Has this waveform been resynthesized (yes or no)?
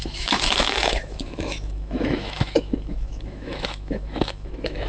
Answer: yes